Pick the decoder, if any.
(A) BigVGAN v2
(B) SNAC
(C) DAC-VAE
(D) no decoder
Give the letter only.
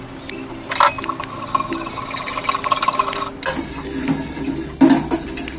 D